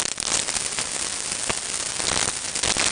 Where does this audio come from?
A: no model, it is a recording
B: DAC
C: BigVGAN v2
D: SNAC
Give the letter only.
A